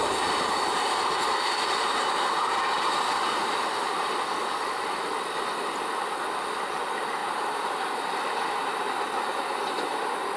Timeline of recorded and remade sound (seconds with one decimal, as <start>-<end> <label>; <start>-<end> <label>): 0.0-10.4 recorded